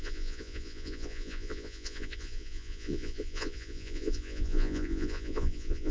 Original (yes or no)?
no